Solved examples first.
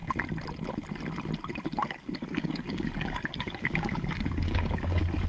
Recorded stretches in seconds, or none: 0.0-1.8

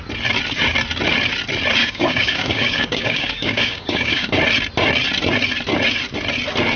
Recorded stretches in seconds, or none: 0.0-1.8; 4.3-6.8